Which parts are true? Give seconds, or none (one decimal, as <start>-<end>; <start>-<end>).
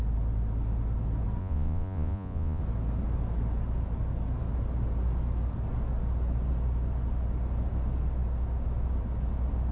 0.0-1.4; 2.6-9.7